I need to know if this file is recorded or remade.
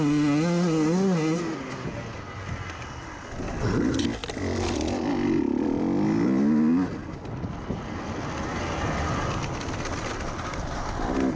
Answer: recorded